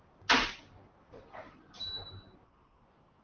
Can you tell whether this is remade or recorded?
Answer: recorded